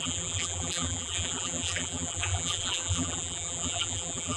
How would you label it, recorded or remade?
remade